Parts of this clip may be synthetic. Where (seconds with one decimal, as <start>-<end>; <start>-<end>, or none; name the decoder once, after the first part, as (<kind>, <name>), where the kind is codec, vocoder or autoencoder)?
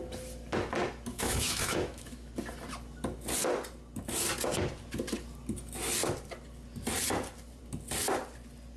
1.1-2.3 (autoencoder, DAC-VAE)